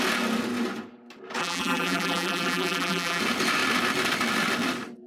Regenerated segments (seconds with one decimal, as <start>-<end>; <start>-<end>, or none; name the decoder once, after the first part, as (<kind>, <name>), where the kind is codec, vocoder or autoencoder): 1.4-3.2 (vocoder, BigVGAN v2)